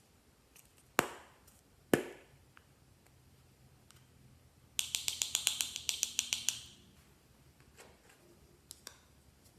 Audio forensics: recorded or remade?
recorded